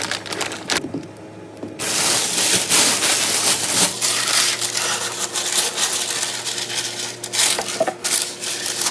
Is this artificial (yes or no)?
no